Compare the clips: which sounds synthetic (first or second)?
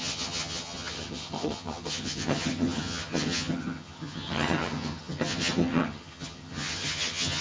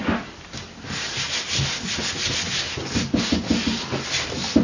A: first